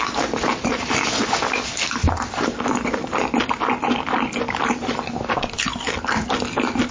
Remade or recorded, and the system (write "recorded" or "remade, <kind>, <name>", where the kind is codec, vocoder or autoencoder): recorded